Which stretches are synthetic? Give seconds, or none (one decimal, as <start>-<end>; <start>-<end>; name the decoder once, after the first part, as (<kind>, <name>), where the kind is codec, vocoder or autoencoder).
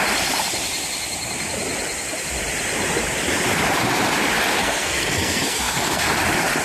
4.6-6.1 (codec, SNAC)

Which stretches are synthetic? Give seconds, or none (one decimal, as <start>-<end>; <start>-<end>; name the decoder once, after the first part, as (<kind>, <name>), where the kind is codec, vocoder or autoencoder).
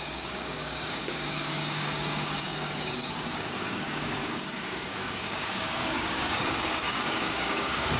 0.0-8.0 (codec, DAC)